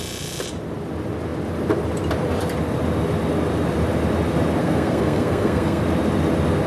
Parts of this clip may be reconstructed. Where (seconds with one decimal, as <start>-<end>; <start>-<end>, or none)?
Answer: 4.6-5.8